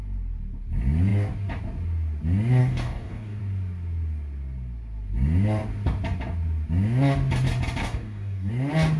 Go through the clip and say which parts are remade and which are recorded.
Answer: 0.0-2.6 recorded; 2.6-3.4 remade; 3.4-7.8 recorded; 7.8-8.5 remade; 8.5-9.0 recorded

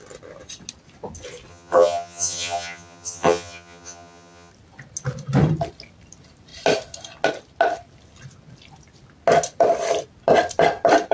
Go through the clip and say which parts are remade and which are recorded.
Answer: 0.0-1.5 recorded; 1.5-4.5 remade; 4.5-11.1 recorded

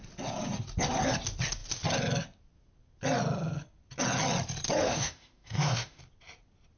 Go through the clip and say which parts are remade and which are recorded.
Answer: 0.0-4.8 recorded; 4.8-6.0 remade; 6.0-6.8 recorded

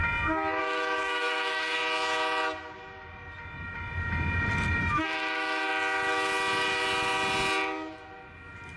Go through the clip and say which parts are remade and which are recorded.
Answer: 0.0-0.6 recorded; 0.6-1.8 remade; 1.8-4.8 recorded; 4.8-5.7 remade; 5.7-8.8 recorded

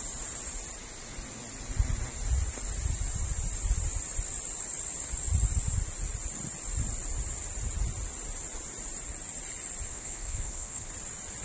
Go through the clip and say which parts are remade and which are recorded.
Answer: 0.0-9.9 recorded; 9.9-10.9 remade; 10.9-11.4 recorded